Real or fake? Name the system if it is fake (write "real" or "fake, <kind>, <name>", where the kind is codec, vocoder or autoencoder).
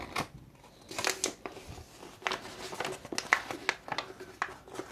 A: real